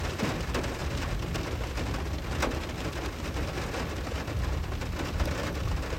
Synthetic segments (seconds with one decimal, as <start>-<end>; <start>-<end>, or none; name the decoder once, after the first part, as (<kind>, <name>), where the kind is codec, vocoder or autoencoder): none